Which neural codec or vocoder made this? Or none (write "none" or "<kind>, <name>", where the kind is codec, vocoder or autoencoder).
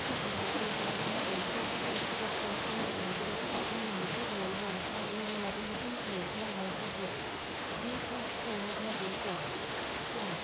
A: autoencoder, DAC-VAE